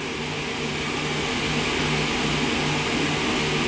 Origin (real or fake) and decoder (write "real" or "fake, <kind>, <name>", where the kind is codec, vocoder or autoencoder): real